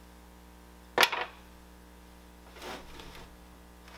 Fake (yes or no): no